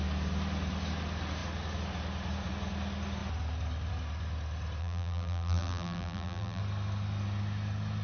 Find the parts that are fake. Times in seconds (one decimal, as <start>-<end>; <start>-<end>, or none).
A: 4.8-6.6